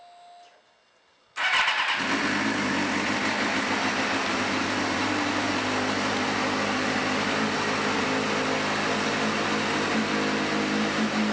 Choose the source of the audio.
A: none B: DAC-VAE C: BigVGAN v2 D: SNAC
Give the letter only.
A